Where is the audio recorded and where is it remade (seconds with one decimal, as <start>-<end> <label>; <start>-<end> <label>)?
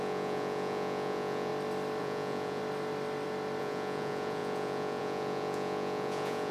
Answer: 0.0-1.5 remade; 1.5-2.0 recorded; 2.0-2.6 remade; 2.6-3.6 recorded; 3.6-6.5 remade